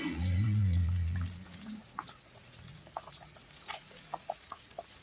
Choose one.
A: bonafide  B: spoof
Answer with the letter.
B